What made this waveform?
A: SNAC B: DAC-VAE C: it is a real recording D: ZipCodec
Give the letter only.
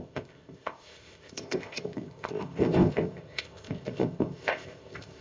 D